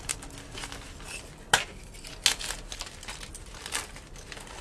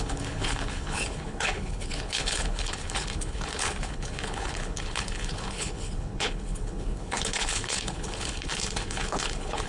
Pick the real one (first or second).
first